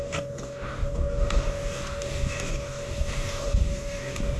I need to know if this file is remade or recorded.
remade